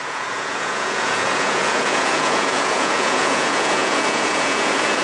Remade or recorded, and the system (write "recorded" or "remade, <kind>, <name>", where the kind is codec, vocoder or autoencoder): remade, vocoder, Vocos